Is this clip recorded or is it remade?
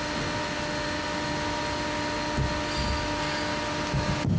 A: recorded